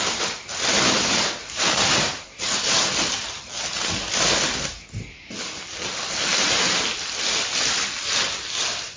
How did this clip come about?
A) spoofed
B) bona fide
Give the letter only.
B